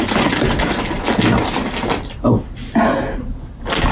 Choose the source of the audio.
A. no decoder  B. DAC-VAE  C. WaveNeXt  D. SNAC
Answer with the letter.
A